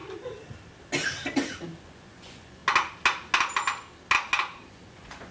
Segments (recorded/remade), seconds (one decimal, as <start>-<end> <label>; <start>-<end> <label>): 0.0-1.8 recorded; 1.8-2.6 remade; 2.6-4.7 recorded; 4.7-5.3 remade